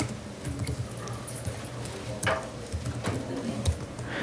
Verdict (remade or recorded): recorded